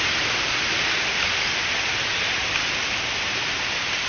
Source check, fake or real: real